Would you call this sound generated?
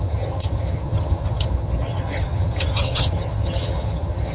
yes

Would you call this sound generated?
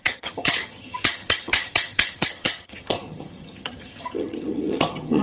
yes